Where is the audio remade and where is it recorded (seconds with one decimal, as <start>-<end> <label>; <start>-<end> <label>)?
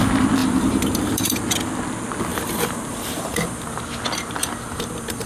0.0-0.4 recorded; 0.4-1.4 remade; 1.4-2.3 recorded; 2.3-3.8 remade; 3.8-4.4 recorded; 4.4-5.3 remade